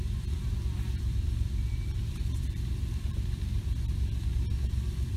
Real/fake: fake